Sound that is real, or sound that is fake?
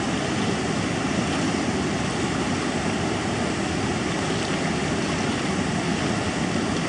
real